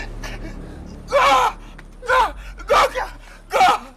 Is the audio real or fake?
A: real